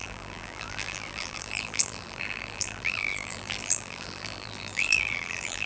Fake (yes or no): yes